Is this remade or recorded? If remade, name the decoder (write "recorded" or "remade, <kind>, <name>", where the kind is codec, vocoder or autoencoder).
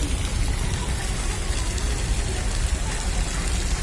recorded